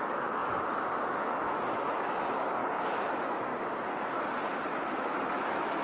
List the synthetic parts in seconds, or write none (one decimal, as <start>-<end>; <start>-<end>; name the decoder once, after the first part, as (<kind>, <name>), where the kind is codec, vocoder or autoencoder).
0.0-2.6 (autoencoder, DAC-VAE); 3.1-3.5; 5.0-5.8